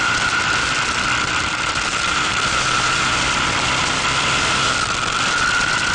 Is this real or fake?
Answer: fake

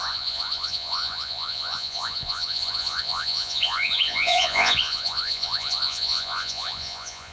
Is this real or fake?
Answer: fake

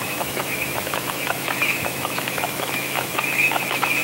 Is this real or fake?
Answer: fake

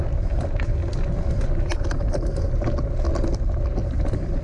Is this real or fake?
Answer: real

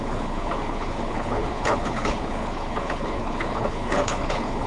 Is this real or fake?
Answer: fake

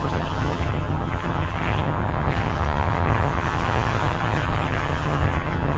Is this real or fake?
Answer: fake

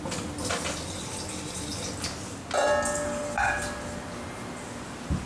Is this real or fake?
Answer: real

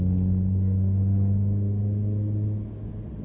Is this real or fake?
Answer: real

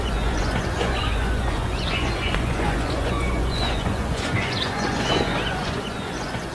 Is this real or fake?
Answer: fake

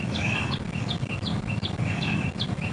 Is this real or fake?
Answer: fake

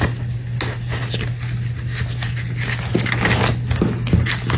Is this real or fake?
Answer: real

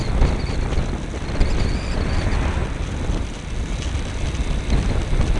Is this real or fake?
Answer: real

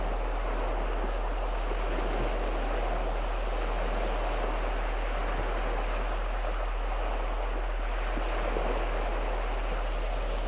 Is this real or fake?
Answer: real